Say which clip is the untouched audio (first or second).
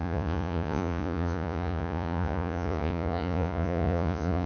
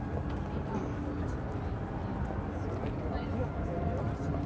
second